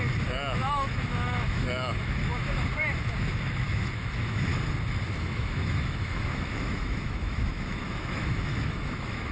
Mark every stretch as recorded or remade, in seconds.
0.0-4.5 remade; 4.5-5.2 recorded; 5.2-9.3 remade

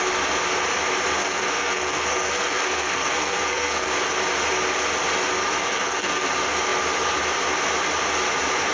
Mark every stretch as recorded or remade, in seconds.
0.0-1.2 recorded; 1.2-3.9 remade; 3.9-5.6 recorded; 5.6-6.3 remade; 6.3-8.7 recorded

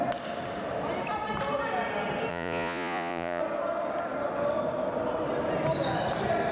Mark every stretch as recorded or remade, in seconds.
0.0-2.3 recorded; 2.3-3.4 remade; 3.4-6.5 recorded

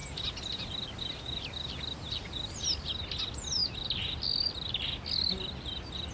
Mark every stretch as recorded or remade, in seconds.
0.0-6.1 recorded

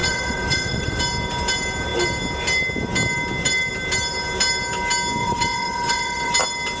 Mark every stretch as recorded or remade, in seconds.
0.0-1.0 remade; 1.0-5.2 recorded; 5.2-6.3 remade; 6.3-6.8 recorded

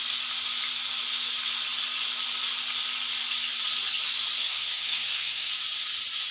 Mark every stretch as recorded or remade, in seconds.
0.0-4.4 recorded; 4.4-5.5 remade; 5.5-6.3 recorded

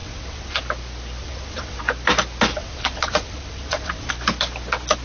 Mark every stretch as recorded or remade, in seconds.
0.0-0.6 remade; 0.6-1.2 recorded; 1.2-1.8 remade; 1.8-2.5 recorded; 2.5-4.1 remade; 4.1-5.0 recorded

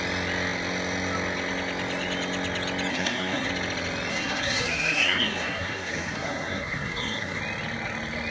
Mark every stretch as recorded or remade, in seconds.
0.0-2.9 recorded; 2.9-3.5 remade; 3.5-4.1 recorded; 4.1-7.4 remade; 7.4-8.3 recorded